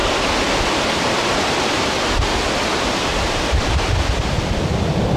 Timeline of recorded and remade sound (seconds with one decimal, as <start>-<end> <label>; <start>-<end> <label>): 0.0-3.1 recorded; 3.1-3.7 remade; 3.7-5.2 recorded